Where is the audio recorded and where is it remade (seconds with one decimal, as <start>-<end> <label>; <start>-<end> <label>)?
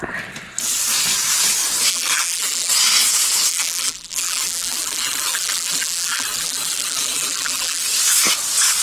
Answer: 0.0-1.9 recorded; 1.9-2.7 remade; 2.7-3.5 recorded; 3.5-7.8 remade; 7.8-8.8 recorded